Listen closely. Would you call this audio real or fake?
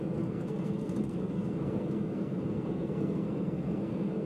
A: fake